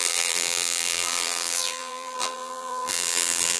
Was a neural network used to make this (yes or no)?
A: yes